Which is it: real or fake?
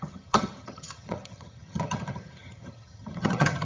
fake